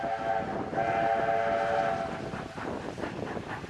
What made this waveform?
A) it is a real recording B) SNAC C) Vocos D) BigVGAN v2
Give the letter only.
A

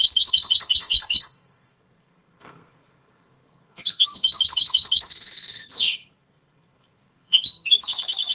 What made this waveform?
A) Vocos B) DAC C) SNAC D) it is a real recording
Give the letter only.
C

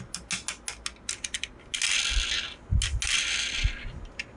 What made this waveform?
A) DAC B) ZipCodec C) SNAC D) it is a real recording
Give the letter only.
D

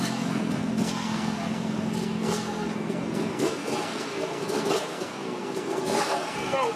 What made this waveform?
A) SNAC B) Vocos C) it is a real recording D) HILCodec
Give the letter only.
A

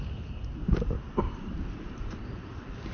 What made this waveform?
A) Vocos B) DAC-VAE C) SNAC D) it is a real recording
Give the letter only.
D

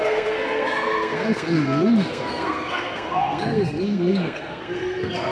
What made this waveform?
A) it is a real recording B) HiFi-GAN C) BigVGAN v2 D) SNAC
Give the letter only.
D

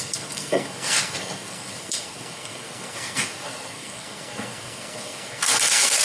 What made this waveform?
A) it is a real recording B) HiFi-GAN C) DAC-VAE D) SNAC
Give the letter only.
D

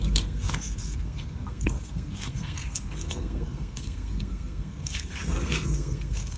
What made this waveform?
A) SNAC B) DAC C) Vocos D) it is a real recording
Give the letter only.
A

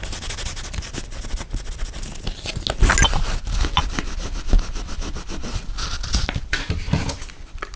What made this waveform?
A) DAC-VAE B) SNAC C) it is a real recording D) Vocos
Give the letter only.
C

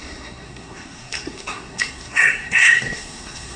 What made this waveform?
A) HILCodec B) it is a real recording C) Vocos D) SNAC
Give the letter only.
D